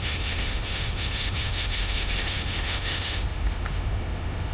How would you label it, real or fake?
fake